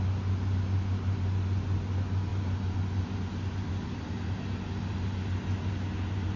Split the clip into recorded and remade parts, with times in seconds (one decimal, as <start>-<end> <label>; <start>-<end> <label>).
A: 0.0-6.4 recorded

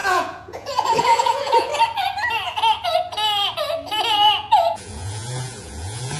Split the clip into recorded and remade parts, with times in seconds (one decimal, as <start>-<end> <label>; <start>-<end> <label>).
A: 0.0-1.7 remade; 1.7-4.1 recorded; 4.1-6.2 remade

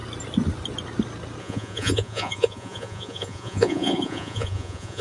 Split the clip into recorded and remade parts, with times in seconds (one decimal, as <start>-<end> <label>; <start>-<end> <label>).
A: 0.0-1.4 recorded; 1.4-5.0 remade

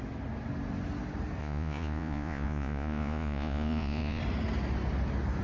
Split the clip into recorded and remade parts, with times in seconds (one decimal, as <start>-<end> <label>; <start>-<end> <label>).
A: 0.0-1.4 recorded; 1.4-4.2 remade; 4.2-5.4 recorded

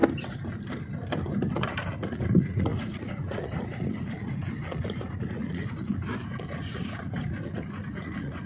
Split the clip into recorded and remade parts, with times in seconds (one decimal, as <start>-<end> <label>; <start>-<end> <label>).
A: 0.0-1.5 recorded; 1.5-8.5 remade

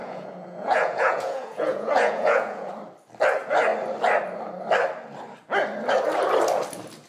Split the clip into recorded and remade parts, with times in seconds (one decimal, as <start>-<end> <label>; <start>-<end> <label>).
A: 0.0-2.7 remade; 2.7-7.1 recorded

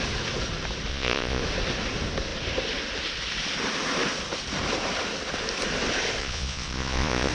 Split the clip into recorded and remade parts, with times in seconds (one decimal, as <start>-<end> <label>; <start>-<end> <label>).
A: 0.0-0.9 recorded; 0.9-1.4 remade; 1.4-6.2 recorded; 6.2-7.3 remade